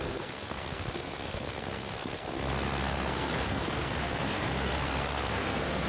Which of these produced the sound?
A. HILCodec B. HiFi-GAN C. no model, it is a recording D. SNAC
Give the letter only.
D